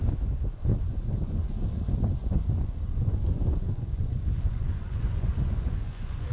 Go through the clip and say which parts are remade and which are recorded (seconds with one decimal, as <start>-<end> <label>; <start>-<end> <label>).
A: 0.0-0.7 recorded; 0.7-1.6 remade; 1.6-2.2 recorded; 2.2-6.3 remade